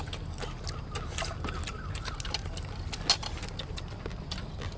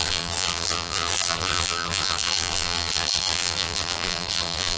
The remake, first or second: second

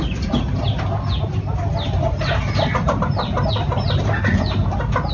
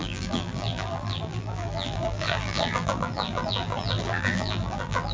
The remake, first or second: second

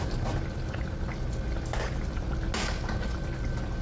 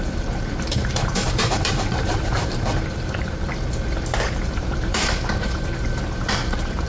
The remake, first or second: second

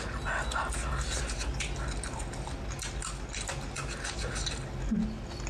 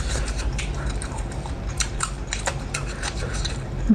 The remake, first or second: second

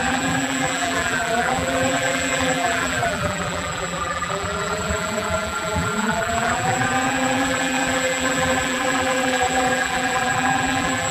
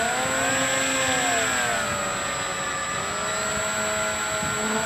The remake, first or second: first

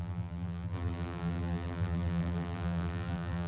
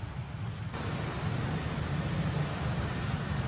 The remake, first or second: first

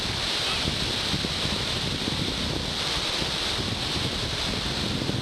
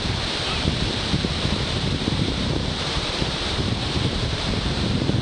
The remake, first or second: second